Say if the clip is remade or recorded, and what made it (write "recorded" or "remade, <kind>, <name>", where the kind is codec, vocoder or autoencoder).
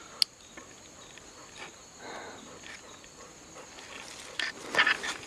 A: recorded